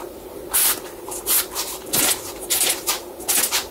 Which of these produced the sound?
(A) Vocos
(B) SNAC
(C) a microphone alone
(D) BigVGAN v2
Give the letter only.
C